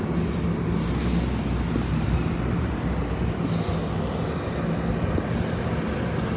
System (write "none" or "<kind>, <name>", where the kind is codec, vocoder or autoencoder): none